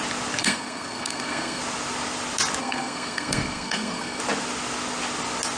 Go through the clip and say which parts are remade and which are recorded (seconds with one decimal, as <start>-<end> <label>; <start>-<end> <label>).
0.0-0.4 recorded; 0.4-1.6 remade; 1.6-2.6 recorded; 2.6-4.2 remade; 4.2-5.6 recorded